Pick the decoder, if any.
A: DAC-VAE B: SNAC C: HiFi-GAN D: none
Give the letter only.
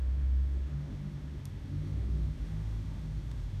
A